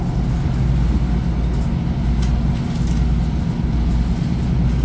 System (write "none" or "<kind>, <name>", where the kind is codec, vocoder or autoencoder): none